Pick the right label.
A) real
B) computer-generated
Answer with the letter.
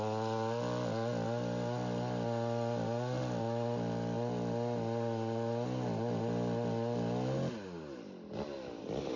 A